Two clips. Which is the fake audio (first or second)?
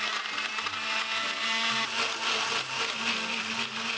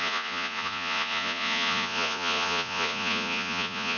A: second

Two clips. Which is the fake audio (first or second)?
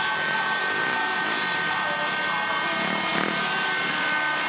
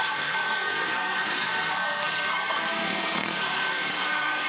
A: second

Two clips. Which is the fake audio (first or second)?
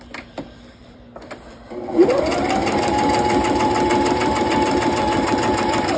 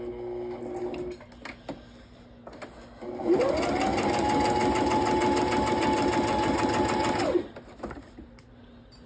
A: first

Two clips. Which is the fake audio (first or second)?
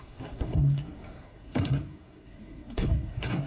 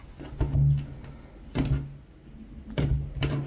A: first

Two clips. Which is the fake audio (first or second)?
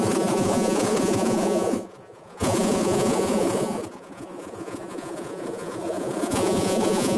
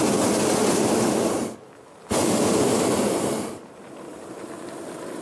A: first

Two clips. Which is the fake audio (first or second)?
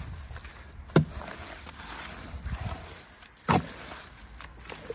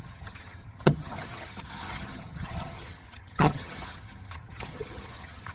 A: second